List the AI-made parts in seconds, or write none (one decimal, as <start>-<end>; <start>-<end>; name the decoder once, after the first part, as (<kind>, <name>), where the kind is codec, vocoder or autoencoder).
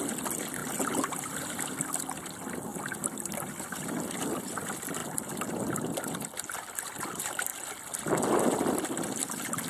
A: none